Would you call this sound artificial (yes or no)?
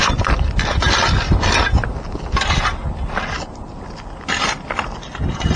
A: no